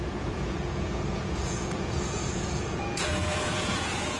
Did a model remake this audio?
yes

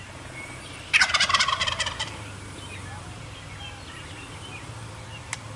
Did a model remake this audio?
no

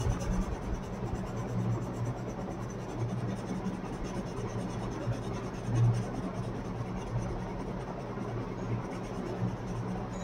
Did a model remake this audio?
no